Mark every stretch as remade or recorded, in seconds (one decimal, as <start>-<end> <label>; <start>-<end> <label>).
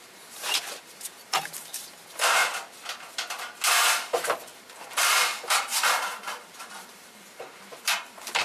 0.0-2.4 remade; 2.4-4.0 recorded; 4.0-8.4 remade